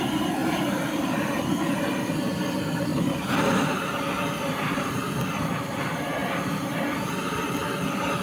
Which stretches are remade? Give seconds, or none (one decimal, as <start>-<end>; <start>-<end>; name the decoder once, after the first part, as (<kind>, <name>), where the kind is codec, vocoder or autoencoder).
2.9-5.1 (vocoder, BigVGAN v2)

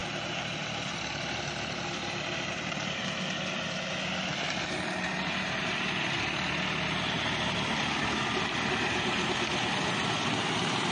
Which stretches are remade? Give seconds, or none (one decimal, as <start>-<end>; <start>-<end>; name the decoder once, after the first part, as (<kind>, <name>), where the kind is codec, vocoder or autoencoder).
0.0-3.0 (vocoder, BigVGAN v2)

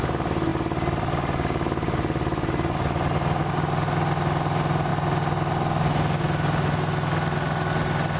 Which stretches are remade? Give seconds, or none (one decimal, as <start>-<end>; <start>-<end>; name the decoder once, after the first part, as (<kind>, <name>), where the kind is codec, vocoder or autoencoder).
none

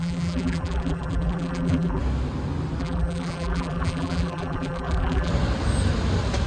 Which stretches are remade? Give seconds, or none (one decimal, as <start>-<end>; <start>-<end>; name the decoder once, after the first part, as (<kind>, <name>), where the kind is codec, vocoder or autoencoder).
0.0-2.0 (vocoder, BigVGAN v2); 2.8-5.3

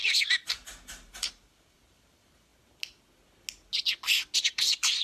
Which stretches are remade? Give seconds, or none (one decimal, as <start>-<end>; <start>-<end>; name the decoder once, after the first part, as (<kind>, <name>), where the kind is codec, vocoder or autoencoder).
0.0-2.5 (vocoder, BigVGAN v2); 4.4-5.0

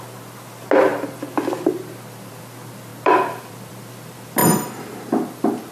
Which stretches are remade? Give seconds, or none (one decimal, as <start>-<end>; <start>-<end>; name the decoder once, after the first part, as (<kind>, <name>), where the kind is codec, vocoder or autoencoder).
0.9-2.4 (vocoder, BigVGAN v2); 2.9-3.7; 4.4-5.7

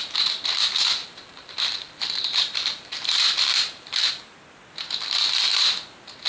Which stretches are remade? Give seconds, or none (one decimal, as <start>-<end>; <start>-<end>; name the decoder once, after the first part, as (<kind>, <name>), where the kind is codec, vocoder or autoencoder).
1.0-4.1 (vocoder, BigVGAN v2)